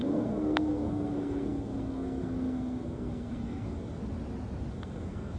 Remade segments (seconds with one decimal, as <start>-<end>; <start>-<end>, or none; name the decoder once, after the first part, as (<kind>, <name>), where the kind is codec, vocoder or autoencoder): 0.0-4.0 (codec, SNAC); 4.7-5.4